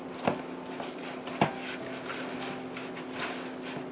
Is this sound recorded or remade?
recorded